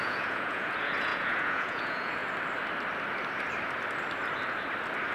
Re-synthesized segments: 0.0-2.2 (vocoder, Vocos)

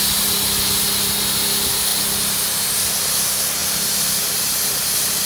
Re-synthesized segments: none